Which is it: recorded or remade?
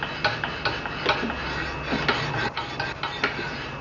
recorded